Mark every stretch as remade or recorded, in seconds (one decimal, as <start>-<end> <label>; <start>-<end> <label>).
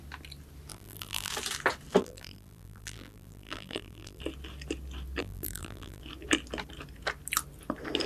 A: 0.0-0.7 recorded; 0.7-1.3 remade; 1.3-2.0 recorded; 2.0-4.2 remade; 4.2-5.2 recorded; 5.2-6.0 remade; 6.0-8.1 recorded